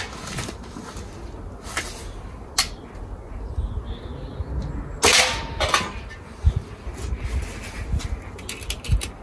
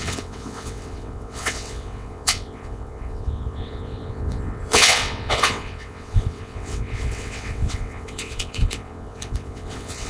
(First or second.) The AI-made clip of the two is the second